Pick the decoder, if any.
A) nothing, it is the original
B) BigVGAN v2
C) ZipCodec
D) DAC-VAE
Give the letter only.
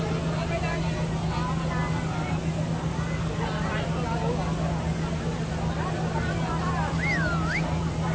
A